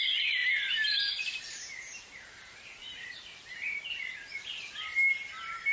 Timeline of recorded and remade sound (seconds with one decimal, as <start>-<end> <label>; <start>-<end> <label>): 0.0-0.4 recorded; 0.4-3.8 remade; 3.8-5.7 recorded